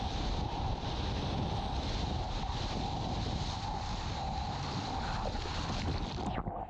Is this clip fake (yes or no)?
no